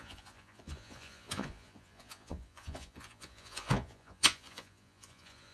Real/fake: fake